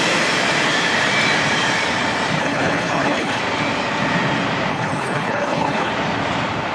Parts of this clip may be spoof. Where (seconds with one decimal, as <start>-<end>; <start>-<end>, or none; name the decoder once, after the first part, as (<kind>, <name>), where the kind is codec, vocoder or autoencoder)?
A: 2.4-3.4 (codec, HILCodec); 4.7-5.9